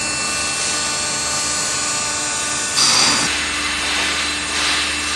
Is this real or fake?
real